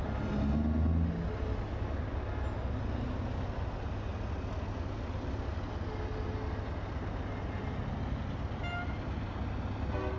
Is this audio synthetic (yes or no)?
no